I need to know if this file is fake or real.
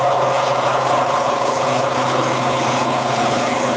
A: fake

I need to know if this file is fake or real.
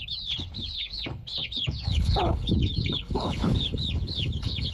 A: fake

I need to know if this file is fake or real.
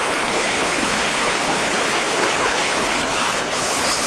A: fake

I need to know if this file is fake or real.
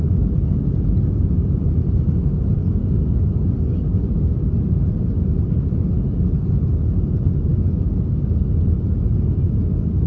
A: real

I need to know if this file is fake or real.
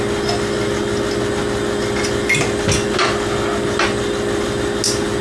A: real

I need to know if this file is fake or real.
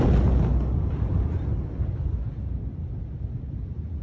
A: real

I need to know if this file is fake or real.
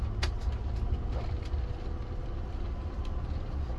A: real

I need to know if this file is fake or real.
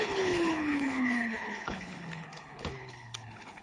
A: fake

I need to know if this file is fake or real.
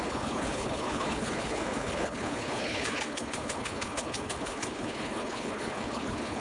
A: fake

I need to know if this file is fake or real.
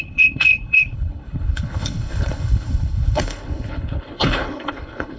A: fake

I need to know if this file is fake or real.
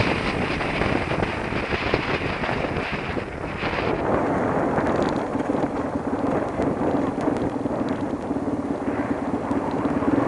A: real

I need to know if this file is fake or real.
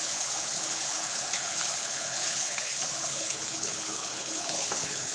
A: fake